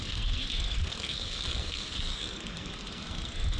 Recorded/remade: remade